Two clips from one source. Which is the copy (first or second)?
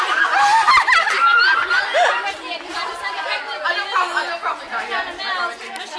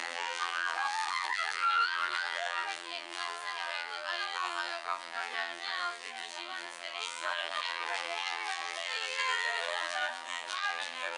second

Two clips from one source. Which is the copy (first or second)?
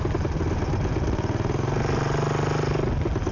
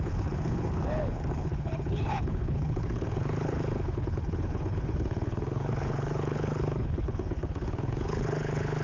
second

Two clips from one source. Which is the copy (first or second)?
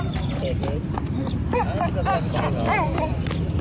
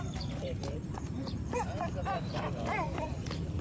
second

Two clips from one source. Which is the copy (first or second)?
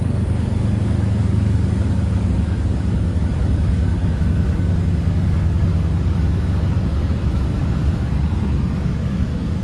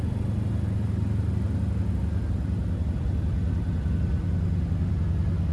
first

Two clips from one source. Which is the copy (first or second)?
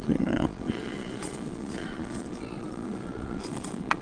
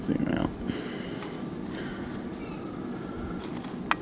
first